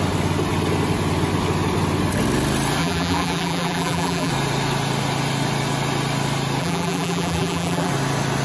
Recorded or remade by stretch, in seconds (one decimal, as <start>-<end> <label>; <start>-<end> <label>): 0.0-2.8 recorded; 2.8-4.3 remade; 4.3-6.6 recorded; 6.6-7.9 remade; 7.9-8.4 recorded